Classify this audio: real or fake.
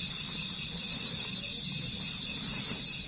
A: real